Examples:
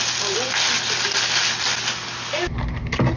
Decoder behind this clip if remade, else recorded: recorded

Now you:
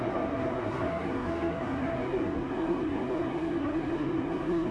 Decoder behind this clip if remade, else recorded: remade, codec, SNAC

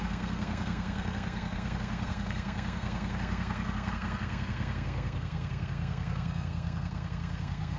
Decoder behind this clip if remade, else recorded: remade, codec, SNAC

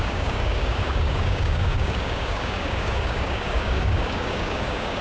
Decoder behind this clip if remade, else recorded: remade, codec, DAC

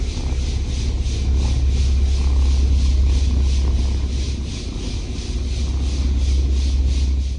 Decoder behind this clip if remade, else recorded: recorded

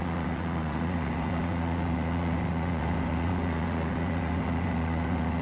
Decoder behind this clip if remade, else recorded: remade, vocoder, Vocos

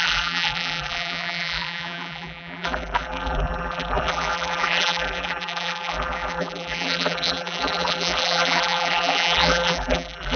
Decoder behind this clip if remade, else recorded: remade, vocoder, BigVGAN v2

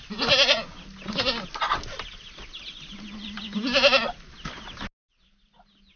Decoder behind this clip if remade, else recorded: recorded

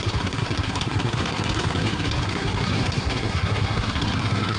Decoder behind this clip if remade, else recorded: remade, codec, SNAC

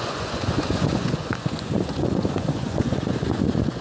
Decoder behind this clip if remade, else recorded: remade, vocoder, Vocos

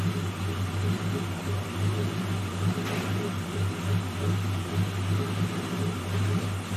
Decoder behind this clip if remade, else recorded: recorded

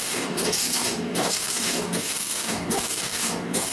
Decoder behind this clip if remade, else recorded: remade, codec, DAC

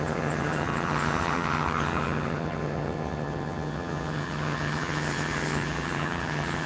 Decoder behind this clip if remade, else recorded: remade, vocoder, HiFi-GAN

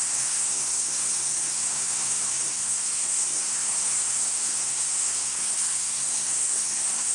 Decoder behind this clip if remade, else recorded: remade, codec, SNAC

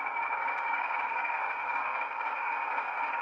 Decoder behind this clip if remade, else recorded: remade, codec, DAC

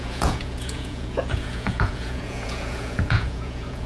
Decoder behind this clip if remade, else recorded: remade, vocoder, Vocos